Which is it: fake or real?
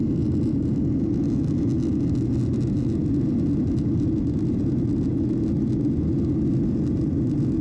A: real